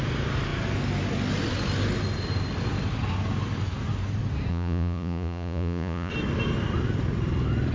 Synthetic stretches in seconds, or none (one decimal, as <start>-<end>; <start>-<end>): 4.5-6.1